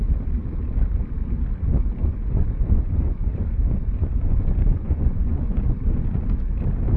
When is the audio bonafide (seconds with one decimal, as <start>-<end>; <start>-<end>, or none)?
0.0-2.0; 6.2-7.0